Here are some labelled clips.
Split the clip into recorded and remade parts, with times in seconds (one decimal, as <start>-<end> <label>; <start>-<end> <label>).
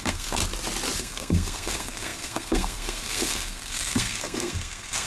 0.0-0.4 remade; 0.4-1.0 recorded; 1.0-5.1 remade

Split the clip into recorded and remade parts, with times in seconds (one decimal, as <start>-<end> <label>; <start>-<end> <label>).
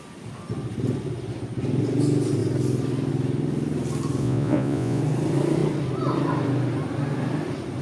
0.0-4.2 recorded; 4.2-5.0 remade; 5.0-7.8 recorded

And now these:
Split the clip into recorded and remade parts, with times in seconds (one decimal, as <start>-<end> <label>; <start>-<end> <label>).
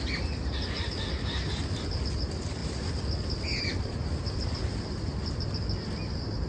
0.0-6.5 recorded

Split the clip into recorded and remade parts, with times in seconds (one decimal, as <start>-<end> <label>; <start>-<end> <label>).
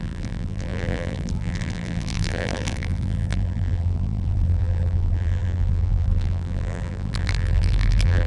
0.0-8.3 remade